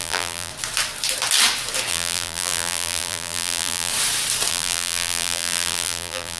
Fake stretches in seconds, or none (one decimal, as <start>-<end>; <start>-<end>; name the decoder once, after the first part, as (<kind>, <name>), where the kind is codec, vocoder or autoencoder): 0.0-0.5 (vocoder, BigVGAN v2); 1.9-3.9; 4.5-6.4